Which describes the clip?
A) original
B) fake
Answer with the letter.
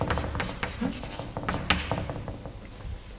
A